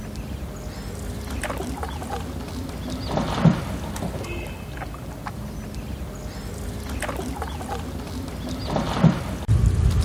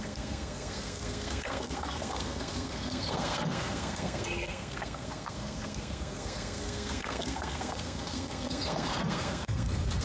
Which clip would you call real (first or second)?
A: first